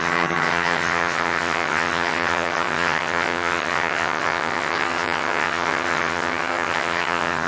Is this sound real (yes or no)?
no